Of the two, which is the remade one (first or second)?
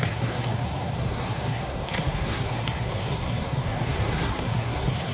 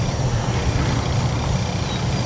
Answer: first